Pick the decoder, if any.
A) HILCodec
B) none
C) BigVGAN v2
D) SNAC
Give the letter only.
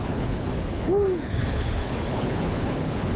A